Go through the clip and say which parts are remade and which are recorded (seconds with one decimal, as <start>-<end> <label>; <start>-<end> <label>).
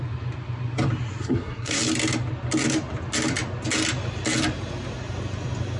0.0-1.2 recorded; 1.2-1.8 remade; 1.8-5.8 recorded